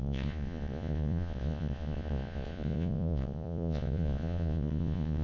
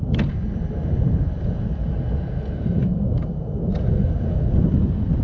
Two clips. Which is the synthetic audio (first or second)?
first